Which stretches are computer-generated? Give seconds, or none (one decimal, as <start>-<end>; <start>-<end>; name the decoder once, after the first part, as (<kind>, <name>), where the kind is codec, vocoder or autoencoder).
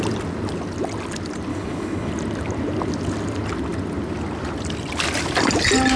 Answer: 1.5-2.1 (codec, HILCodec)